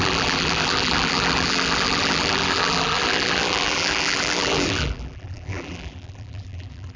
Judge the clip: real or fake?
fake